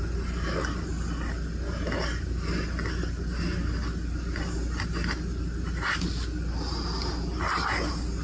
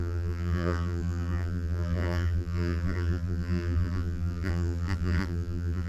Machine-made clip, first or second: second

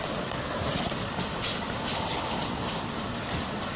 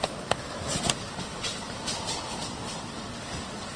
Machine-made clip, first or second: first